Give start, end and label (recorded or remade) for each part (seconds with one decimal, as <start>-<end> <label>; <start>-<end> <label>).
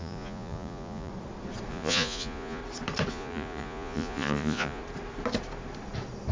0.0-1.1 remade; 1.1-1.7 recorded; 1.7-2.6 remade; 2.6-3.1 recorded; 3.1-4.8 remade; 4.8-6.3 recorded